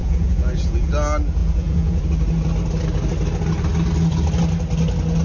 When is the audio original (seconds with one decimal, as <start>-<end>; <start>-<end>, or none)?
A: 0.9-1.4; 2.0-5.2